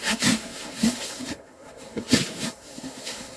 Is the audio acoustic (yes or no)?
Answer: no